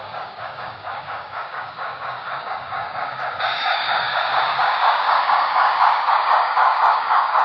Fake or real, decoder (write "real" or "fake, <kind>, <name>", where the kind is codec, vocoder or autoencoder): fake, codec, DAC